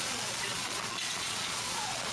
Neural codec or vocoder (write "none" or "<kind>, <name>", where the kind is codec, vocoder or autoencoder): vocoder, Vocos